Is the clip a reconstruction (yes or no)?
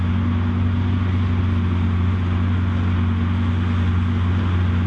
no